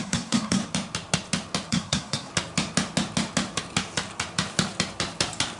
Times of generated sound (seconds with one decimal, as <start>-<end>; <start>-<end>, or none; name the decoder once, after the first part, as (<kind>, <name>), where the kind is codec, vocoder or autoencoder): 0.0-0.6 (codec, SNAC); 1.7-2.3